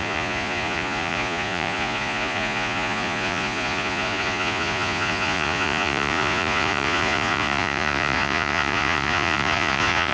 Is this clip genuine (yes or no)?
no